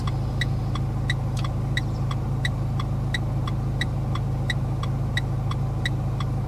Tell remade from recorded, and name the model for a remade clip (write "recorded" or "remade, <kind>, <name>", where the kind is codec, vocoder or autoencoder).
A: recorded